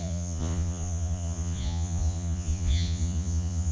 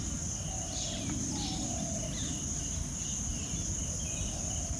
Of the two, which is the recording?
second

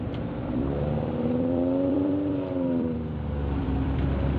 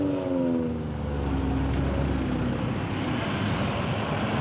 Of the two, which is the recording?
second